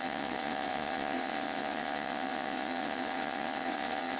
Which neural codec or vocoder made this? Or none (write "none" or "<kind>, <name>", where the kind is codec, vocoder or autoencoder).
vocoder, WaveNeXt